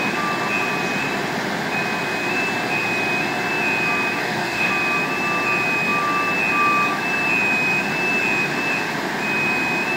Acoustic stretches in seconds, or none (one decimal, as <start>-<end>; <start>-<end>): 0.0-4.2; 4.7-10.0